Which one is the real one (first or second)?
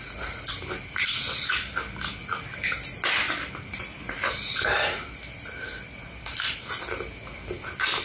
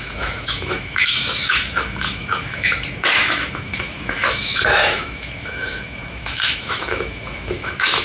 first